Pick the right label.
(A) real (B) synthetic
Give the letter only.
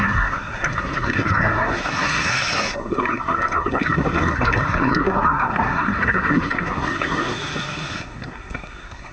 B